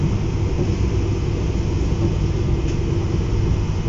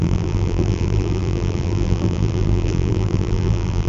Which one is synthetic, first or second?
second